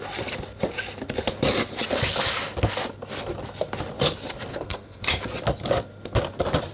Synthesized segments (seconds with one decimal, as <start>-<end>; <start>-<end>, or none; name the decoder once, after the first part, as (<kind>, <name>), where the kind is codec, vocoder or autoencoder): 4.5-5.0 (codec, SNAC)